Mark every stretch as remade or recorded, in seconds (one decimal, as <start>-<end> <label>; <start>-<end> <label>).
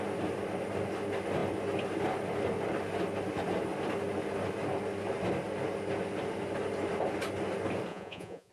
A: 0.0-7.9 recorded; 7.9-8.5 remade